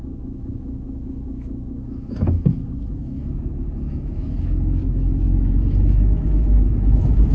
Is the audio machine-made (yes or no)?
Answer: yes